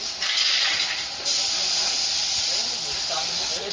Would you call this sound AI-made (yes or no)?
no